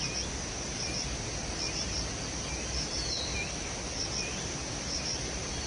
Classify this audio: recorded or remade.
recorded